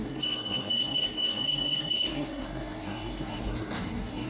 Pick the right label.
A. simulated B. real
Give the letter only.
A